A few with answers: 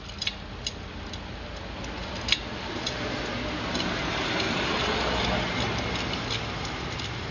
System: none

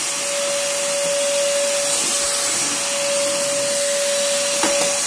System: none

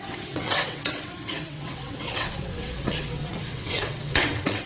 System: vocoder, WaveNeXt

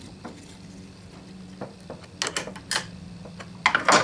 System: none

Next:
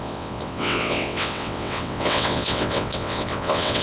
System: vocoder, WaveNeXt